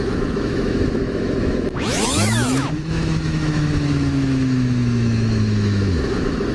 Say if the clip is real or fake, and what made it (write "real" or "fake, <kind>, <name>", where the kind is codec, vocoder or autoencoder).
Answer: fake, autoencoder, DAC-VAE